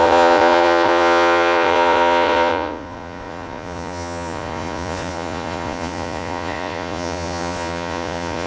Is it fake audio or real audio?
fake